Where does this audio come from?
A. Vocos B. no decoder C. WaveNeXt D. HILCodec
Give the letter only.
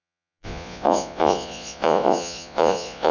A